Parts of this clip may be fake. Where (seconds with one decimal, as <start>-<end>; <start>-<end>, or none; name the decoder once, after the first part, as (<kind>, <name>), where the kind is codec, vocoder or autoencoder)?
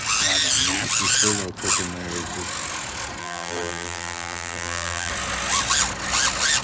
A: 3.2-5.1 (vocoder, BigVGAN v2)